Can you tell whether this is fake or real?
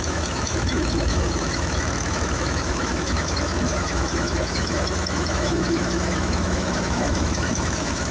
fake